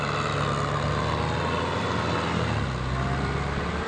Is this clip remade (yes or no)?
no